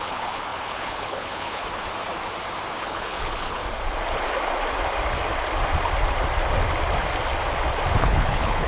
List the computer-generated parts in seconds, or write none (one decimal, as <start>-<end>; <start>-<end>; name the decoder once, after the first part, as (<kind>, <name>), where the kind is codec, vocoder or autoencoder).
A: 0.0-1.6 (codec, HILCodec); 2.8-3.6; 8.0-8.7